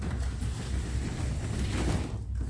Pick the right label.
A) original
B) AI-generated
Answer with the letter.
A